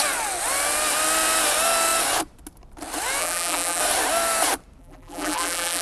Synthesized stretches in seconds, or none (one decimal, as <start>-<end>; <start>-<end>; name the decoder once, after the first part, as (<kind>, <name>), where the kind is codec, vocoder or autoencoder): 3.2-3.8 (vocoder, BigVGAN v2); 4.8-5.8